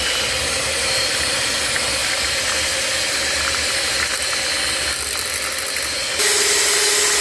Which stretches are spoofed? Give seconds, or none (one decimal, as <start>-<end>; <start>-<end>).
2.0-4.2